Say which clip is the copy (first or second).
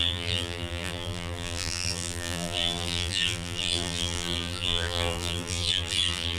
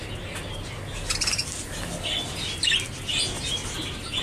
first